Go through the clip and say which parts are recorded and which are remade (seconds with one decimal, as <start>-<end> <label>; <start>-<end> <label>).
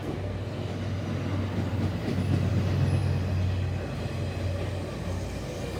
0.0-0.7 remade; 0.7-5.8 recorded